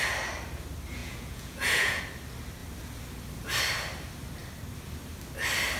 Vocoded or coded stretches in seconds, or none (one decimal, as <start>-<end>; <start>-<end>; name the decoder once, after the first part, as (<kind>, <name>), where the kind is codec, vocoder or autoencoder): 1.0-2.0 (vocoder, Vocos)